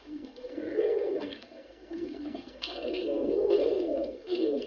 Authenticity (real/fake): fake